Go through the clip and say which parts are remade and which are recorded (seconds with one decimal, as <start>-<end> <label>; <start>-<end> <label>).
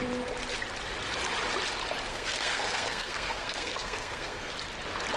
0.0-2.1 recorded; 2.1-4.5 remade; 4.5-5.2 recorded